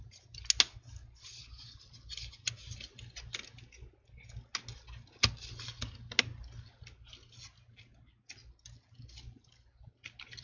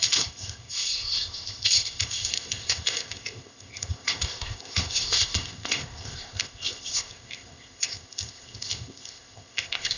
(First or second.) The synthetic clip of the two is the second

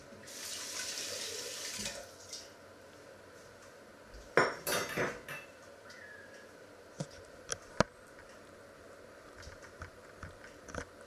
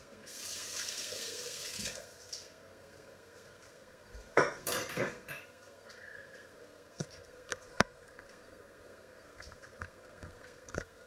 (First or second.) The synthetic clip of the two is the second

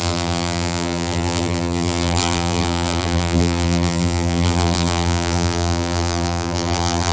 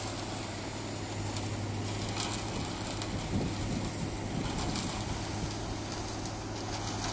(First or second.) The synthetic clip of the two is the first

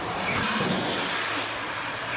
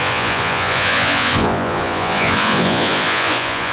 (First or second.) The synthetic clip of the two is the second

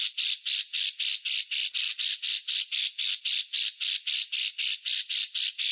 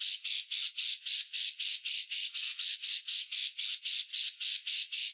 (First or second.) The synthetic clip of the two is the second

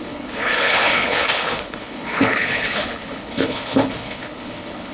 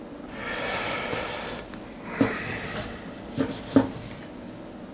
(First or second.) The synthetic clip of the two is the first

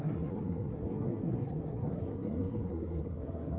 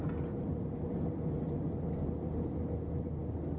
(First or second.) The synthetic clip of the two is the first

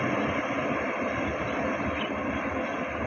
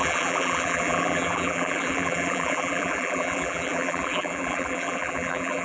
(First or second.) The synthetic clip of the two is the second